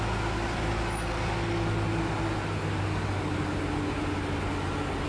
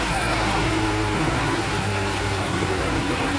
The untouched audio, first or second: first